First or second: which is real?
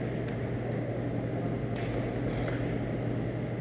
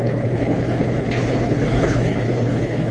first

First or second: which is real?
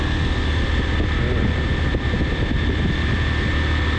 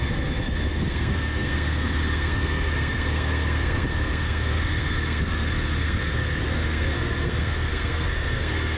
first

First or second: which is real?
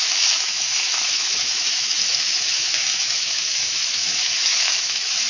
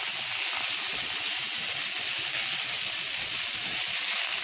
second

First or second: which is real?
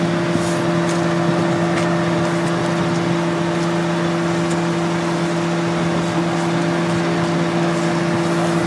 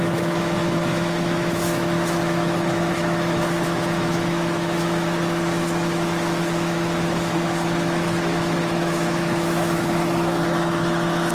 first